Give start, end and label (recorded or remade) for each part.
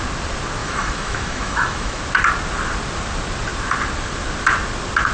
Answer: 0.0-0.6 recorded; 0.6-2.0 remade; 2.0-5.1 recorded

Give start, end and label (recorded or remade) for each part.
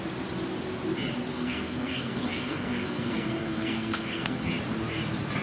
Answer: 0.0-1.3 recorded; 1.3-4.5 remade; 4.5-5.4 recorded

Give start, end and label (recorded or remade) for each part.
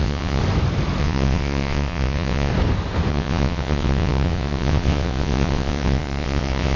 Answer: 0.0-0.4 remade; 0.4-1.0 recorded; 1.0-2.5 remade; 2.5-3.1 recorded; 3.1-6.8 remade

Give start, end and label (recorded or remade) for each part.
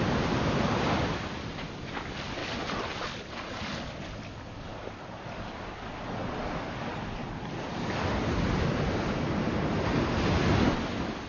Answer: 0.0-11.3 recorded